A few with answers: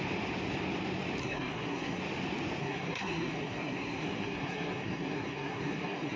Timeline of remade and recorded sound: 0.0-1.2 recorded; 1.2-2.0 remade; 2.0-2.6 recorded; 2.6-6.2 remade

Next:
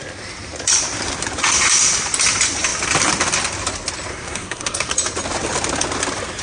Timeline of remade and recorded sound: 0.0-4.1 recorded; 4.1-4.9 remade; 4.9-6.4 recorded

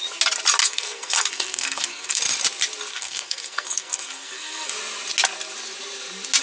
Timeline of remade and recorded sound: 0.0-0.6 recorded; 0.6-2.2 remade; 2.2-2.9 recorded; 2.9-4.7 remade; 4.7-6.4 recorded